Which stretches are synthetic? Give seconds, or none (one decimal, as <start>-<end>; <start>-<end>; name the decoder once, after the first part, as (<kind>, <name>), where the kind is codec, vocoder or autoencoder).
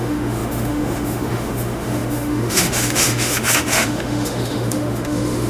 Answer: 0.0-5.5 (autoencoder, DAC-VAE)